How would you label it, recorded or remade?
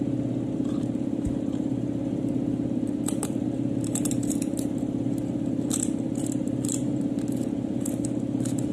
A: remade